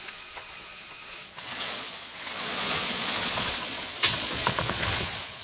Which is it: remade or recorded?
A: remade